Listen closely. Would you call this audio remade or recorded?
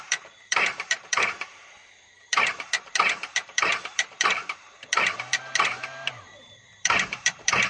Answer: remade